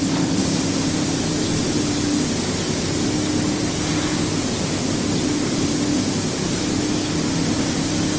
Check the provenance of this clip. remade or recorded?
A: recorded